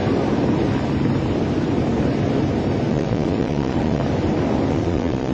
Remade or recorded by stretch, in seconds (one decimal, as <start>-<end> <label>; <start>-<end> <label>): 0.0-2.9 recorded; 2.9-4.0 remade; 4.0-4.7 recorded; 4.7-5.3 remade